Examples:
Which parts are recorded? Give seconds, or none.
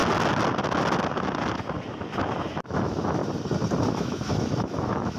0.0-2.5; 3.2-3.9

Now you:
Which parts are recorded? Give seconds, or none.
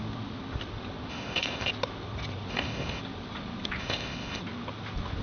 0.0-1.1; 1.7-2.5; 3.0-3.8; 4.4-5.2